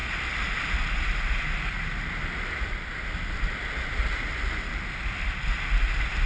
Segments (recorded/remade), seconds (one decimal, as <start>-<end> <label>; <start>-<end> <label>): 0.0-0.8 remade; 0.8-2.2 recorded; 2.2-2.7 remade; 2.7-6.3 recorded